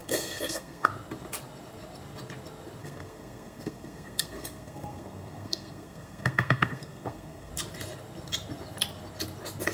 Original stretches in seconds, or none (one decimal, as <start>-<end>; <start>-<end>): 0.9-2.8; 7.5-9.7

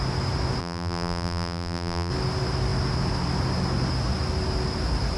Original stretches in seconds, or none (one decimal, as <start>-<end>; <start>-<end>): 0.0-0.6; 2.1-5.2